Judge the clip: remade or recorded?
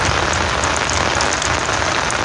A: recorded